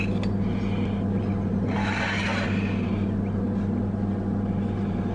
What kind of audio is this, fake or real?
real